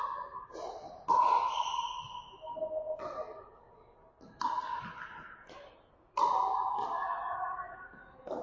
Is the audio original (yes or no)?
yes